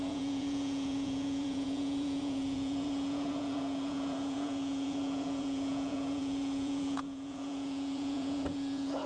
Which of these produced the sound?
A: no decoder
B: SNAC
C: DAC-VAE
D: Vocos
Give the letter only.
D